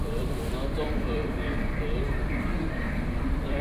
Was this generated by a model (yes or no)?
yes